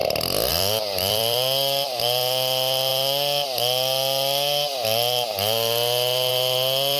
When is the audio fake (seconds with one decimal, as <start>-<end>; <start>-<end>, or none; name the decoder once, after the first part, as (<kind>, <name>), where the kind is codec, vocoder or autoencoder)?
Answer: 0.5-2.9 (vocoder, BigVGAN v2); 6.3-7.0

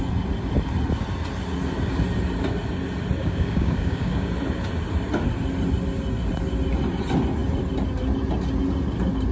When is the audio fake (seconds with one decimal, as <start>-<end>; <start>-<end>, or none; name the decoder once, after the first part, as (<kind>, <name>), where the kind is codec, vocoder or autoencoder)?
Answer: 3.2-4.3 (codec, DAC)

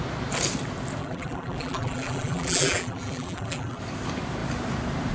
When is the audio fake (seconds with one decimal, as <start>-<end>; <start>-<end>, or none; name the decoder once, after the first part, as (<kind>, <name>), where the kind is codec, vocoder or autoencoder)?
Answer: 1.0-3.8 (vocoder, BigVGAN v2)

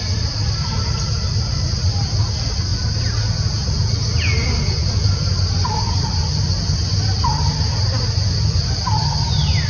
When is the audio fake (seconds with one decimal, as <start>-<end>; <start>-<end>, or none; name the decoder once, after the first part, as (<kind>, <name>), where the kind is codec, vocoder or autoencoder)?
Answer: none

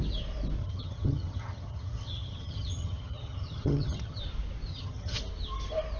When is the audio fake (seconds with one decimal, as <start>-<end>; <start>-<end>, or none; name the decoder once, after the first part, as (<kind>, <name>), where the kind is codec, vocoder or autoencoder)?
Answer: 0.6-4.2 (vocoder, HiFi-GAN); 4.7-5.2